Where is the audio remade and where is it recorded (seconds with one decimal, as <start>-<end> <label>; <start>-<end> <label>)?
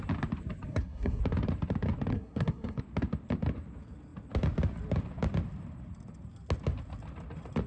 0.0-0.7 recorded; 0.7-1.2 remade; 1.2-2.1 recorded; 2.1-2.8 remade; 2.8-7.7 recorded